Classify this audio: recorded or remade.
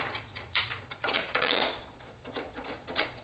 remade